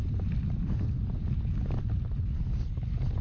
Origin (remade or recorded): recorded